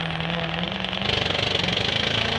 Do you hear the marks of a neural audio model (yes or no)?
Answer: no